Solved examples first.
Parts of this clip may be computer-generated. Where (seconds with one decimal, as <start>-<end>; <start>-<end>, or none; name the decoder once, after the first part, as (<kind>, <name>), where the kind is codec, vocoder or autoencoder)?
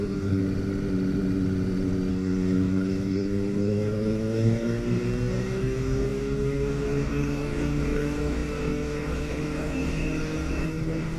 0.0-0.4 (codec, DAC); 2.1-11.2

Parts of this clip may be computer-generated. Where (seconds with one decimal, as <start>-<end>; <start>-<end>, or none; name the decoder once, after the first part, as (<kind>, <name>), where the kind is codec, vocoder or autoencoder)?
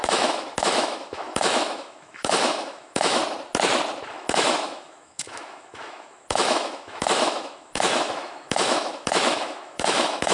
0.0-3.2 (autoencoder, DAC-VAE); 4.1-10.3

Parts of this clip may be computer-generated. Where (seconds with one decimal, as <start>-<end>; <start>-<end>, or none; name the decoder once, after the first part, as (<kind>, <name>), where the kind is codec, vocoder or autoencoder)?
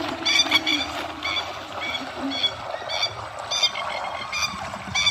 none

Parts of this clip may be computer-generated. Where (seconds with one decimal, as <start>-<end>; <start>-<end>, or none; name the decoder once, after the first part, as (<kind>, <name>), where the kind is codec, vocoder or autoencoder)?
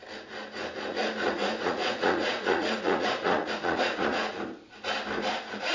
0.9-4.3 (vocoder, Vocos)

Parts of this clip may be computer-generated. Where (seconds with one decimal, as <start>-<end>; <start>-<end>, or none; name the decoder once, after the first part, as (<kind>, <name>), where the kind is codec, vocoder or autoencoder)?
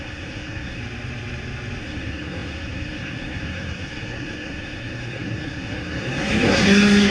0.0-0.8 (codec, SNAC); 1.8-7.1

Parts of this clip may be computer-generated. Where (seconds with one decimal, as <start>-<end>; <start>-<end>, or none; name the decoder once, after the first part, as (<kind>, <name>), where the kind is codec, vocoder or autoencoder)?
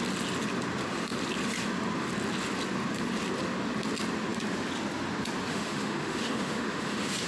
5.5-7.3 (autoencoder, DAC-VAE)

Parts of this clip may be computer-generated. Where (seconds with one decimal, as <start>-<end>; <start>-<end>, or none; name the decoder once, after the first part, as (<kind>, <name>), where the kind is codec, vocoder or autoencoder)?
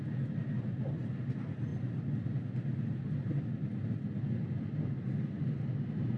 none